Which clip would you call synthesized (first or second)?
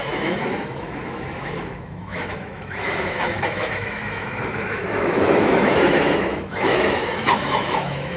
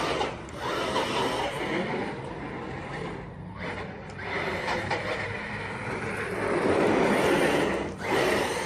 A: first